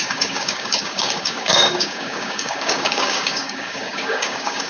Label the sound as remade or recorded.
remade